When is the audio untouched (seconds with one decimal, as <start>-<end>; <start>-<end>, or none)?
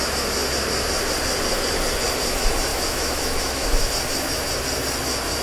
0.0-2.7; 3.9-5.4